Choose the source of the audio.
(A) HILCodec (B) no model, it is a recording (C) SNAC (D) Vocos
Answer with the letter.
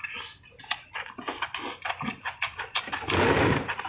B